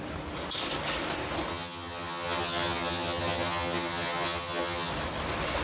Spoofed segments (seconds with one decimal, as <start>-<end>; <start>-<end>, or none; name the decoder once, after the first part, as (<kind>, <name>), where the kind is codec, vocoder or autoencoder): 1.5-4.9 (vocoder, HiFi-GAN)